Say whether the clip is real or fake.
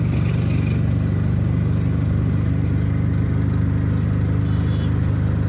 real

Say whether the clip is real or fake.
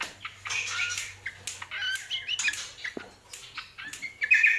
real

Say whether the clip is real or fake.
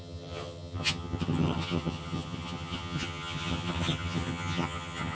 fake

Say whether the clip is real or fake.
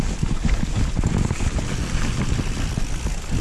real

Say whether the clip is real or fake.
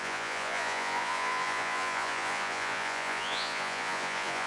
fake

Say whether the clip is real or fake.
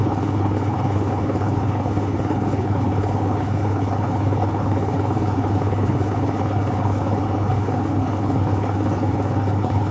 fake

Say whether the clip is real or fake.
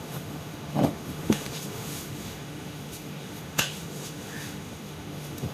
fake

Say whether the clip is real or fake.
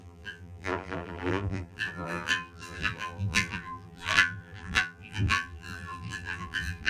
fake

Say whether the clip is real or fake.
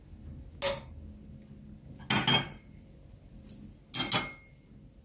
real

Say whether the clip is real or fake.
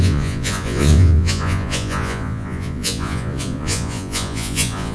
fake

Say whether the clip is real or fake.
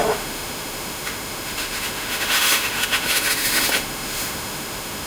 fake